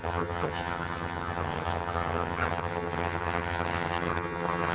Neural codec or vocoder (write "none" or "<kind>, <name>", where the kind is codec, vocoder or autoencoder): vocoder, HiFi-GAN